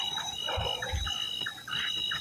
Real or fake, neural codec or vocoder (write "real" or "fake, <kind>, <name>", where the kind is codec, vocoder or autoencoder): real